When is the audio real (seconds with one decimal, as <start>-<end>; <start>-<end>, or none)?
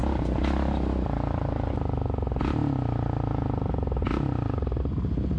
0.0-5.4